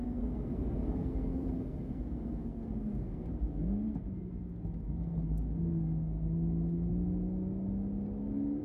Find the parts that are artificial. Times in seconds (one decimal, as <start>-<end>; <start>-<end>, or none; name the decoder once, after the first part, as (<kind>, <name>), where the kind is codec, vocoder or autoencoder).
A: 0.0-6.9 (codec, SNAC)